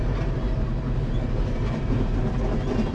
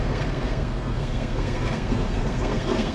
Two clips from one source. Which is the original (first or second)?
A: first